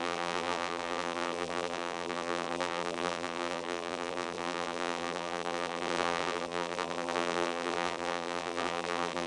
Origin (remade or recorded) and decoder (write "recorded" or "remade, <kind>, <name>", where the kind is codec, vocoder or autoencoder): remade, vocoder, BigVGAN v2